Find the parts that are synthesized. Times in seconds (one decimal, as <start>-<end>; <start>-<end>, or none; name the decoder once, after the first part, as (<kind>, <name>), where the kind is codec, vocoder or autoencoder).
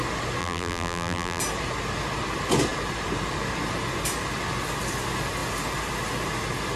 0.4-1.4 (vocoder, BigVGAN v2)